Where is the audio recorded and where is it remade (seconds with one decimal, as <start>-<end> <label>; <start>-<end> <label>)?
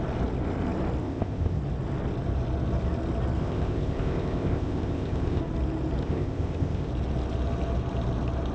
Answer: 0.0-1.0 recorded; 1.0-1.6 remade; 1.6-3.4 recorded; 3.4-5.4 remade; 5.4-6.0 recorded; 6.0-6.9 remade; 6.9-8.5 recorded